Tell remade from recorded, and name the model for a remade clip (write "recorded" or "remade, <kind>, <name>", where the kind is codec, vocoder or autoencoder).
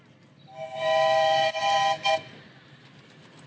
recorded